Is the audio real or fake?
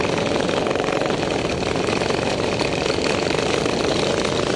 fake